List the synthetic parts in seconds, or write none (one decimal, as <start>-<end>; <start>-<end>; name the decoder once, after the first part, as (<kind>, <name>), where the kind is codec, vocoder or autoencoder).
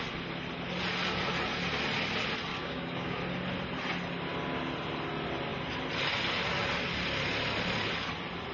2.5-3.2 (codec, DAC)